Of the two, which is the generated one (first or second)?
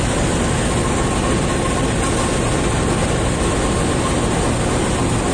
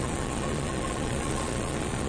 second